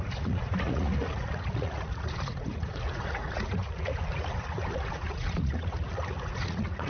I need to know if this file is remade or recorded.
remade